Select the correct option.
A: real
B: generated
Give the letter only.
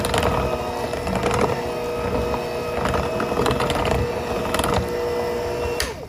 A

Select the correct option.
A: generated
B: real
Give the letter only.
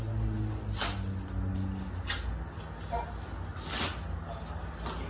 B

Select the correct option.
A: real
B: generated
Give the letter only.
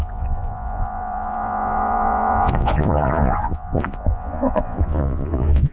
B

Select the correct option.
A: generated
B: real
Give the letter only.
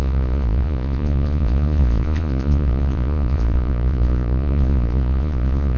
A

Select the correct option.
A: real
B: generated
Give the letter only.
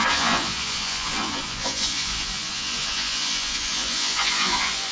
B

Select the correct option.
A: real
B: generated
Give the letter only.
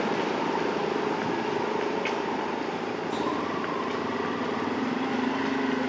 A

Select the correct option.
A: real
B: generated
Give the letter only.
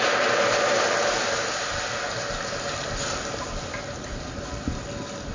A